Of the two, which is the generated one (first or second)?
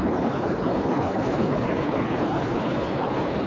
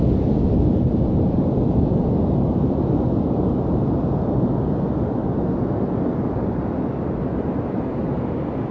first